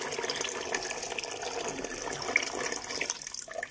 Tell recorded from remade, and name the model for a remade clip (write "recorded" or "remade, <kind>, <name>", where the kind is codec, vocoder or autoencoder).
recorded